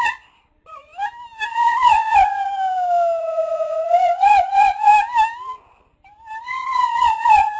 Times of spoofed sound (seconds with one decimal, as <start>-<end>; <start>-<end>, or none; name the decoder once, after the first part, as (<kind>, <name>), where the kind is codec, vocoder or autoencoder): 0.0-0.9 (vocoder, Vocos); 1.5-2.5; 3.2-4.9; 6.4-7.6